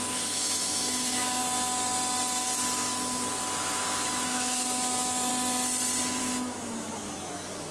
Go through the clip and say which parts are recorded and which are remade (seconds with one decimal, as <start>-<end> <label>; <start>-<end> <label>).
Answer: 0.0-1.4 remade; 1.4-3.6 recorded; 3.6-5.3 remade; 5.3-6.2 recorded; 6.2-7.7 remade